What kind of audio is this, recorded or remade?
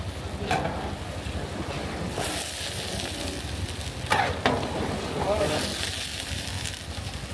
recorded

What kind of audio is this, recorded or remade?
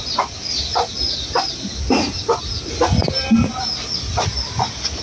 recorded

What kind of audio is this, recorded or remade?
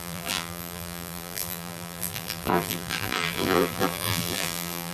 remade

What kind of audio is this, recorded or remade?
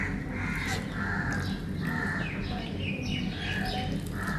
recorded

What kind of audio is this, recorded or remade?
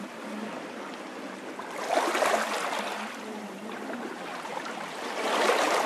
recorded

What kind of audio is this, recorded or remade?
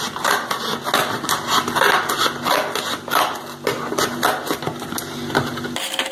recorded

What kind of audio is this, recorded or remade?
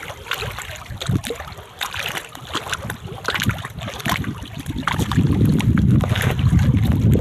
recorded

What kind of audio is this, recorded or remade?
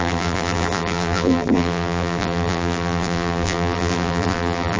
remade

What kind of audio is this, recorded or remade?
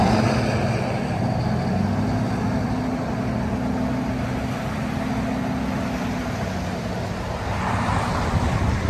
recorded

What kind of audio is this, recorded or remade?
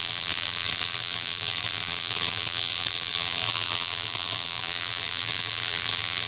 remade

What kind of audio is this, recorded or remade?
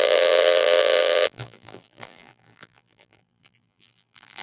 remade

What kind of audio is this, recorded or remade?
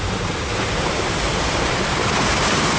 remade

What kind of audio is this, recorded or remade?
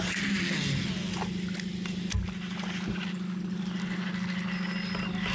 recorded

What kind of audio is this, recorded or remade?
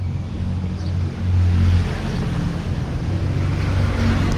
recorded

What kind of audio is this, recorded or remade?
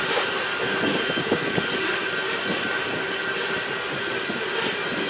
recorded